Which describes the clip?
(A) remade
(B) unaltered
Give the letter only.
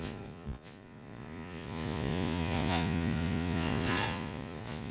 A